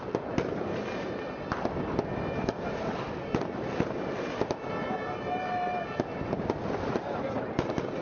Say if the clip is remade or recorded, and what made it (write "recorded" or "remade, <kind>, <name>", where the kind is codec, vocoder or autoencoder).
recorded